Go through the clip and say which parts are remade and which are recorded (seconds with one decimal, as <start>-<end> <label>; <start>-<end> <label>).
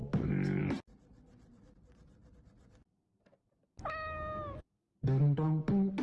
0.0-6.0 recorded